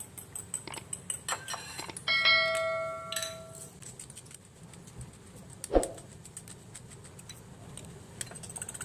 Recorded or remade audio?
recorded